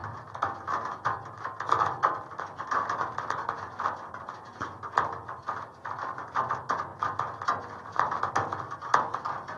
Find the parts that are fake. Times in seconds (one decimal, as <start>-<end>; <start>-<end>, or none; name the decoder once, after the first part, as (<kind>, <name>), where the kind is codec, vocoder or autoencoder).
none